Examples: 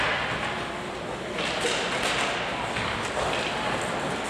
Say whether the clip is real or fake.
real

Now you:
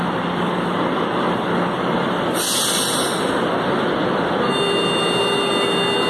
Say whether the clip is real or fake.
real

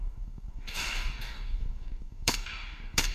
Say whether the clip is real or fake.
fake